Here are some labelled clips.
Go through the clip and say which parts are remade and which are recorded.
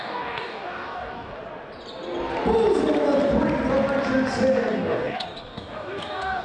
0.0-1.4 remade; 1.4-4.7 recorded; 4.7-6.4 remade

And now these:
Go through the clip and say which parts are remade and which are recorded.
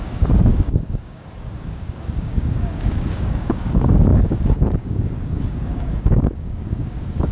0.0-7.3 remade